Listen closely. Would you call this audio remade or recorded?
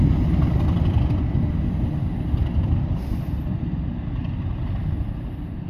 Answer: recorded